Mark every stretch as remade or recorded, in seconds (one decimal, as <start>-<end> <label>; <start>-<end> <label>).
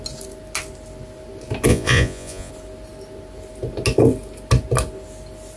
0.0-1.7 recorded; 1.7-2.5 remade; 2.5-5.6 recorded